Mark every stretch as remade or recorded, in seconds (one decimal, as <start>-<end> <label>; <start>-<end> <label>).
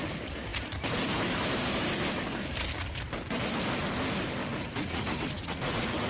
0.0-4.5 recorded; 4.5-6.1 remade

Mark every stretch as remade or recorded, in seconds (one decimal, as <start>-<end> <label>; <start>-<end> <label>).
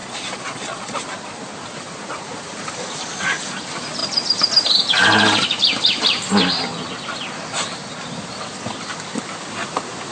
0.0-1.0 remade; 1.0-10.1 recorded